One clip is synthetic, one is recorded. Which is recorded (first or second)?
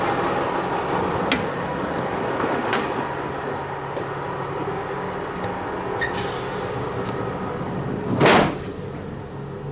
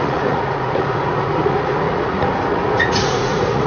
first